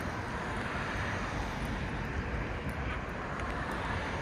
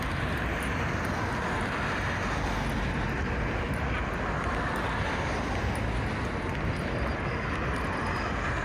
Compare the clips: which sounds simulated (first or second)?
first